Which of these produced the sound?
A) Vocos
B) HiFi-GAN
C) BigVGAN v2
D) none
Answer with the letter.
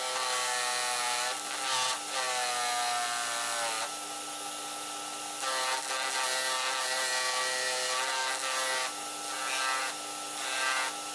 D